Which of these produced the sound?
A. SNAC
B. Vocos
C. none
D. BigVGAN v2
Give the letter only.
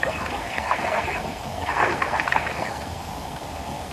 A